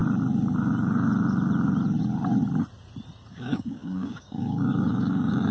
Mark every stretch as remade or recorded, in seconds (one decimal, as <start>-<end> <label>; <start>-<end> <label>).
0.0-3.3 recorded; 3.3-5.5 remade